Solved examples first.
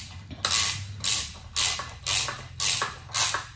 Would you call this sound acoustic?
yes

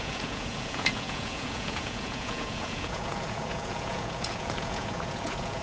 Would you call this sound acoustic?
no